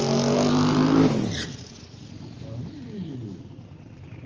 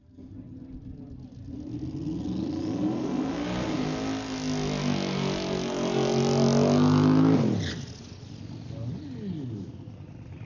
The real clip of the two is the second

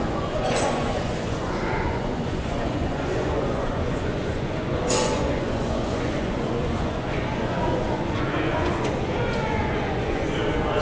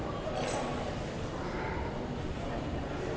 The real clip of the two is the second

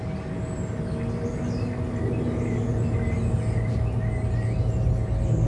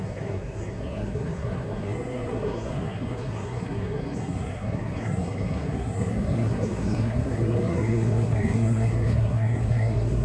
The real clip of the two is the first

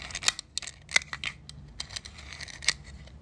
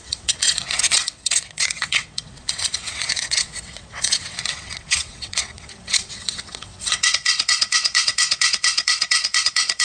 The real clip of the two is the first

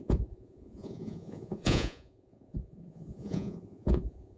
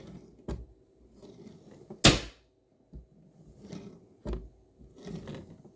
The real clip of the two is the second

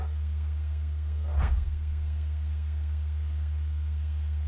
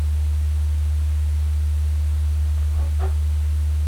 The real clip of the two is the second